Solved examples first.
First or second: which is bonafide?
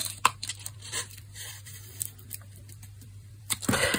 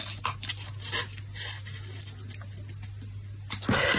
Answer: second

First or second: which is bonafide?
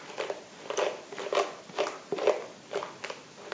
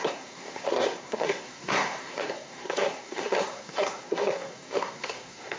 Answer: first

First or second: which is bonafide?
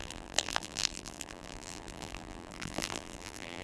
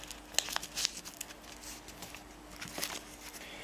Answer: second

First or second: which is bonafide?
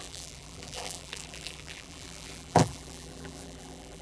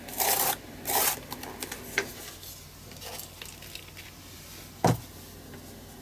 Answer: second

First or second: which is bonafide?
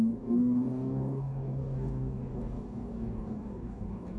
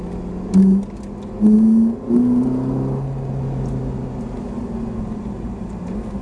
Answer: second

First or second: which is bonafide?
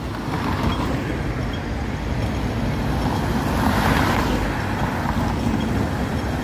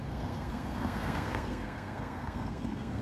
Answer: first